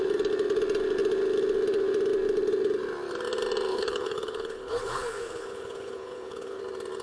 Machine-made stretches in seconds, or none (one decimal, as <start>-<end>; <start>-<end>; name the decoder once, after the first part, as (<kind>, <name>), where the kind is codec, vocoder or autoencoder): 3.7-6.6 (codec, HILCodec)